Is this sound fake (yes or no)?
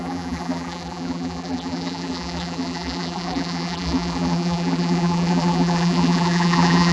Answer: yes